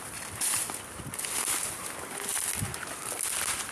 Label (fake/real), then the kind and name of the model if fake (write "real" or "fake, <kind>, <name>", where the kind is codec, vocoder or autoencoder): real